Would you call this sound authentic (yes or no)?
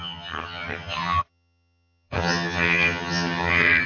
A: no